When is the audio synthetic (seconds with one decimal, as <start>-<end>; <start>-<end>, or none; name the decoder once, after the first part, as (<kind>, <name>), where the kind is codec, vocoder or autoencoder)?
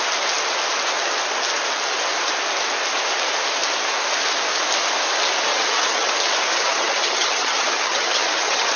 5.5-6.1 (vocoder, HiFi-GAN); 6.5-8.8